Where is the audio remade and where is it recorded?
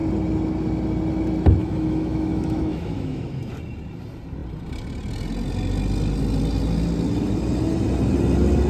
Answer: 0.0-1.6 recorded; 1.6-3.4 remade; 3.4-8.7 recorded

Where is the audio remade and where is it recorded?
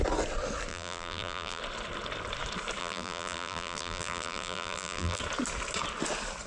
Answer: 0.0-0.7 recorded; 0.7-1.6 remade; 1.6-2.8 recorded; 2.8-5.2 remade; 5.2-6.5 recorded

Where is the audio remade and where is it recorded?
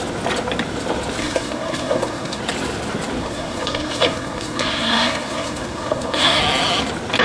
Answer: 0.0-1.2 recorded; 1.2-2.4 remade; 2.4-3.2 recorded; 3.2-6.4 remade; 6.4-7.2 recorded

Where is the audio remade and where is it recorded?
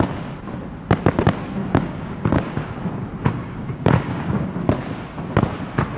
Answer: 0.0-1.6 recorded; 1.6-2.4 remade; 2.4-3.4 recorded; 3.4-4.5 remade; 4.5-6.0 recorded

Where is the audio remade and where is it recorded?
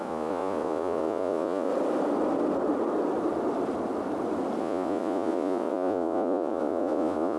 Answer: 0.0-1.7 remade; 1.7-4.6 recorded; 4.6-7.4 remade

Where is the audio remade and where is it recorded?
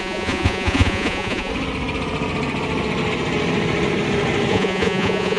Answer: 0.0-1.5 remade; 1.5-4.5 recorded; 4.5-5.4 remade